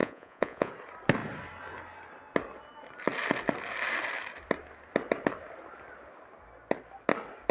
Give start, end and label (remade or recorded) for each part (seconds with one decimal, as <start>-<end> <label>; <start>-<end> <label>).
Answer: 0.0-0.7 remade; 0.7-7.5 recorded